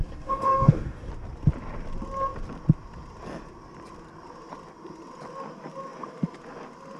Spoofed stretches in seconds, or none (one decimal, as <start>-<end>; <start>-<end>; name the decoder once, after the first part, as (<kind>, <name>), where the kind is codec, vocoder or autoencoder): 0.0-1.1 (codec, DAC)